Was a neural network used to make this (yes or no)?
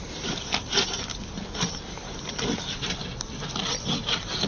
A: no